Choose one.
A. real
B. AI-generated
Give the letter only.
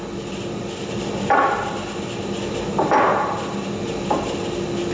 A